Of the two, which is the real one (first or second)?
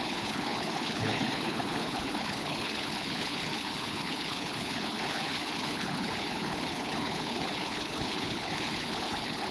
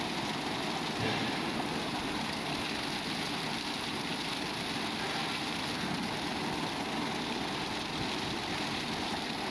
second